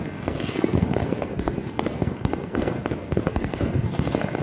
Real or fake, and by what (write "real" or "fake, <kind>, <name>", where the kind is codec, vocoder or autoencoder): fake, codec, SNAC